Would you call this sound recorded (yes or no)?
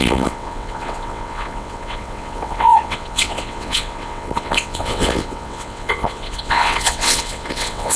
no